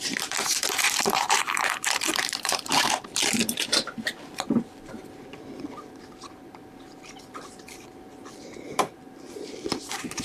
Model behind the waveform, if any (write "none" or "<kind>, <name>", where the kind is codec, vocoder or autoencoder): vocoder, BigVGAN v2